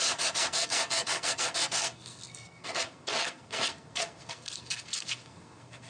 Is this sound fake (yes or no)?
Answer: yes